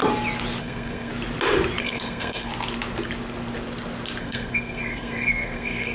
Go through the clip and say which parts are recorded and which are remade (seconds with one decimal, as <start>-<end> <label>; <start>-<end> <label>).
0.0-0.6 recorded; 0.6-1.1 remade; 1.1-1.8 recorded; 1.8-2.5 remade; 2.5-4.2 recorded; 4.2-5.9 remade